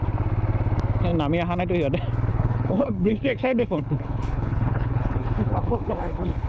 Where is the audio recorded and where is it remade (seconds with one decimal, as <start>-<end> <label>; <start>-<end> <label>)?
0.0-2.3 recorded; 2.3-6.5 remade

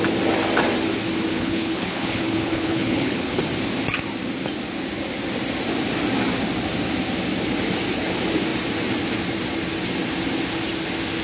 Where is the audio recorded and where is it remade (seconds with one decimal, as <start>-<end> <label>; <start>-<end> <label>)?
0.0-1.3 recorded; 1.3-3.4 remade; 3.4-11.2 recorded

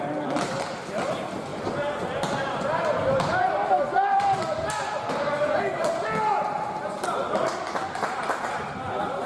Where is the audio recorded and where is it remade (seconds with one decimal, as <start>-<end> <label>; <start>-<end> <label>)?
0.0-9.3 recorded

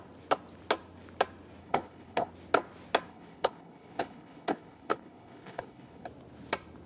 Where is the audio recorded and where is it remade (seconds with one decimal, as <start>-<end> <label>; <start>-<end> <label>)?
0.0-1.6 recorded; 1.6-2.3 remade; 2.3-3.1 recorded; 3.1-6.1 remade; 6.1-6.9 recorded

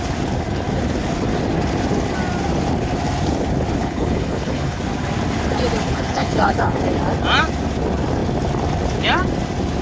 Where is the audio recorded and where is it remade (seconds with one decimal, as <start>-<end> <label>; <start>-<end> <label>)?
0.0-3.8 recorded; 3.8-4.8 remade; 4.8-5.8 recorded; 5.8-6.8 remade; 6.8-9.8 recorded

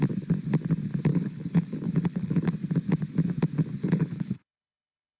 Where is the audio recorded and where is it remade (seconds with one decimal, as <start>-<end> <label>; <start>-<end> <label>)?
0.0-1.1 recorded; 1.1-2.5 remade; 2.5-3.8 recorded; 3.8-5.2 remade

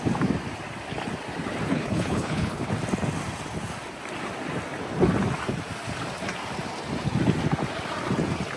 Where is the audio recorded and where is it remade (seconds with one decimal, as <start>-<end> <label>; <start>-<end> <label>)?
0.0-1.7 recorded; 1.7-2.7 remade; 2.7-8.6 recorded

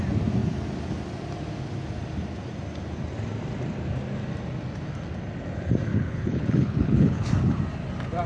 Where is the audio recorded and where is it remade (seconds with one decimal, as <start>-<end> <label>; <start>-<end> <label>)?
0.0-5.9 recorded; 5.9-7.6 remade; 7.6-8.3 recorded